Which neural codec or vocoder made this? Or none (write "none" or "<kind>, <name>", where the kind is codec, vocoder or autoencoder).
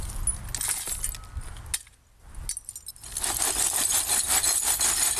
none